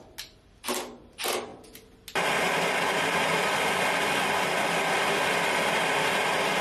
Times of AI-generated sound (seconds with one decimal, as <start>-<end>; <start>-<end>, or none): none